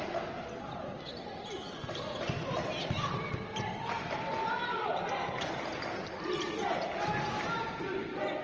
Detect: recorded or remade recorded